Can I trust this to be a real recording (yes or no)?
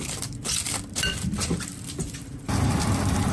no